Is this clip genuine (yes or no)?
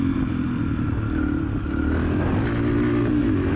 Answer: yes